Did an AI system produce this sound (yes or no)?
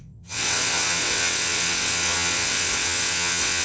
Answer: yes